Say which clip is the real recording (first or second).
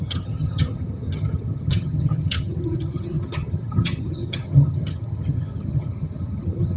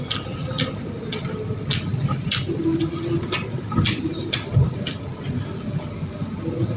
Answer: second